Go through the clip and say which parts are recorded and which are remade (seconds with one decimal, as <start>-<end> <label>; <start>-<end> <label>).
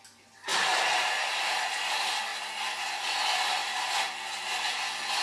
0.0-5.2 recorded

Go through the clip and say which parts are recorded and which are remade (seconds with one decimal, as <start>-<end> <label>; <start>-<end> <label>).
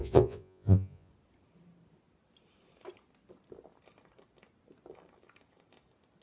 0.0-1.1 remade; 1.1-6.2 recorded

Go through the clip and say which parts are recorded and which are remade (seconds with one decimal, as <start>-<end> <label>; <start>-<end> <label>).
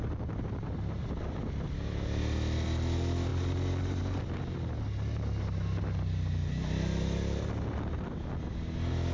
0.0-9.1 recorded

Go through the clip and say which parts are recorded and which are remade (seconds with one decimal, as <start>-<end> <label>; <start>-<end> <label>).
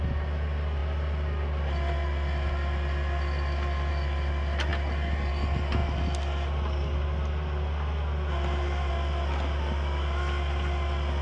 0.0-11.2 recorded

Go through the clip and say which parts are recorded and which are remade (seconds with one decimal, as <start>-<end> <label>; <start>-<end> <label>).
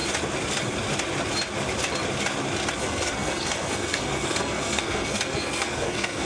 0.0-2.8 recorded; 2.8-6.3 remade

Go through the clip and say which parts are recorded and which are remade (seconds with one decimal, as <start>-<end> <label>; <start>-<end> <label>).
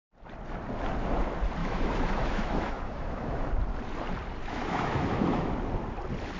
0.0-1.6 recorded; 1.6-3.5 remade; 3.5-4.4 recorded; 4.4-5.5 remade; 5.5-6.4 recorded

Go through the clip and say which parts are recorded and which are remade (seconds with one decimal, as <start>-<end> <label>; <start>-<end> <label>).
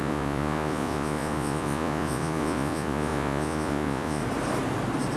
0.0-4.2 remade; 4.2-5.2 recorded